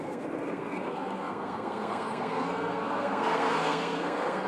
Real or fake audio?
fake